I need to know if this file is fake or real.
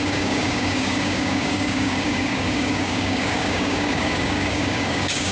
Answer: fake